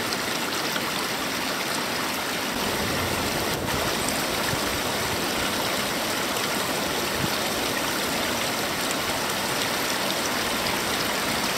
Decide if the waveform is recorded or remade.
recorded